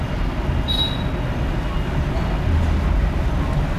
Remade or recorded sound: recorded